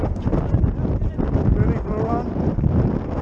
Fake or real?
real